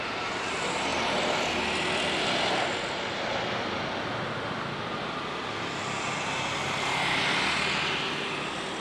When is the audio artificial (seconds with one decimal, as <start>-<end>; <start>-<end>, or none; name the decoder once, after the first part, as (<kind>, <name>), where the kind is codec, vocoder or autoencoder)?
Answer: none